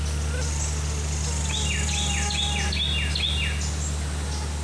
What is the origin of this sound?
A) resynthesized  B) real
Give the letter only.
B